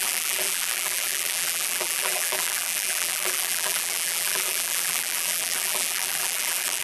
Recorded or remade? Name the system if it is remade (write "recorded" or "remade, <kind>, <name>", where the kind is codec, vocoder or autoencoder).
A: remade, vocoder, BigVGAN v2